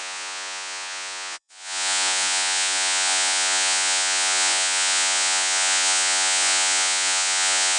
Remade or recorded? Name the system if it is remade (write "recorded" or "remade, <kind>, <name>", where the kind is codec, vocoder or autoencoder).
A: remade, vocoder, Vocos